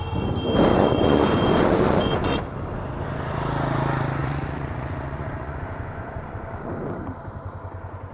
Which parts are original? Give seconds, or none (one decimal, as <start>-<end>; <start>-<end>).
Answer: 0.0-0.7; 2.4-4.2; 6.7-8.1